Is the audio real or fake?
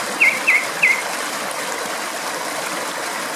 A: real